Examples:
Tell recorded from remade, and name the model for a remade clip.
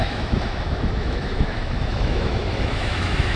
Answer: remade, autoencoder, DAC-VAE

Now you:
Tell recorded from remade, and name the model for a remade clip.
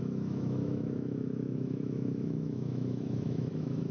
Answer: remade, autoencoder, DAC-VAE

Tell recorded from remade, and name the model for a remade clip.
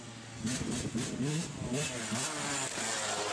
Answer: recorded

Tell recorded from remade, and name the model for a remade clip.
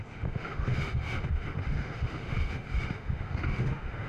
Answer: remade, autoencoder, DAC-VAE